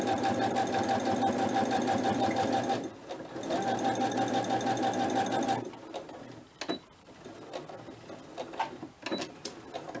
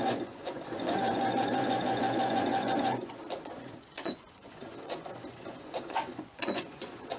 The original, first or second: first